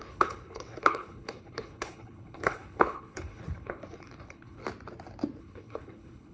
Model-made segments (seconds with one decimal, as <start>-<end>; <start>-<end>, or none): 0.0-4.6; 5.4-6.3